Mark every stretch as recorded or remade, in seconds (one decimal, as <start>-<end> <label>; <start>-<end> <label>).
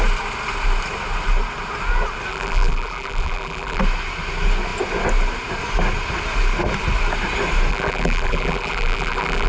0.0-2.3 recorded; 2.3-3.8 remade; 3.8-7.7 recorded; 7.7-9.5 remade